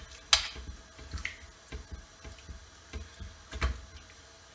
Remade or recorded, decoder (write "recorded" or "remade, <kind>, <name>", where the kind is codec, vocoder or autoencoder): recorded